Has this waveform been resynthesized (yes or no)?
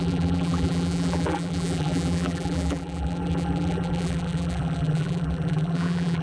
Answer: yes